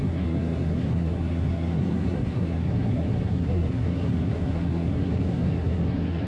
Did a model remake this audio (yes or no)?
yes